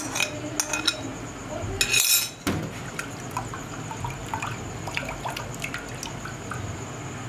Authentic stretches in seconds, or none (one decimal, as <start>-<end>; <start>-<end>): 0.0-4.2; 5.4-7.3